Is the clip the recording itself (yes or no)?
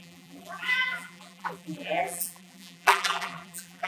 no